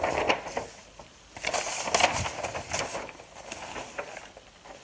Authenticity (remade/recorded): recorded